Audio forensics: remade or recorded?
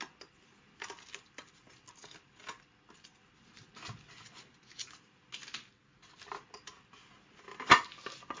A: recorded